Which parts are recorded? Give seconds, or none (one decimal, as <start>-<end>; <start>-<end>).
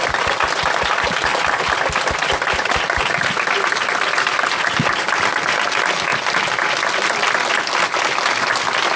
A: 0.0-9.0